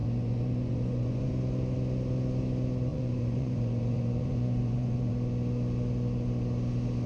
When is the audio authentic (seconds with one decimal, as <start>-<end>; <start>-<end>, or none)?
1.3-2.9; 5.1-7.1